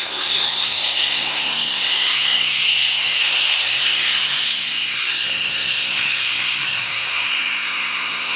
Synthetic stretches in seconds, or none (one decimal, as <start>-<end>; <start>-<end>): 0.0-8.4